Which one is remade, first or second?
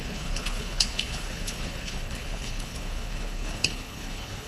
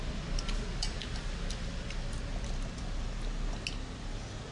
first